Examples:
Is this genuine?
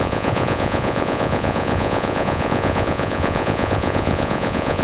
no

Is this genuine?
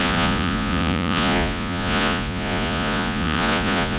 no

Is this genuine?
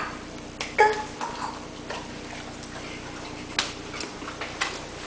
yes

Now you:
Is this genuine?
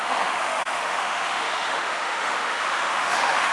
no